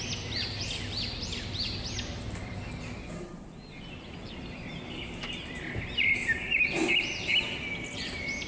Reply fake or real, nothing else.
real